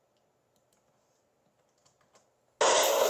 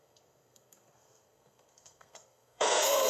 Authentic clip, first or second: first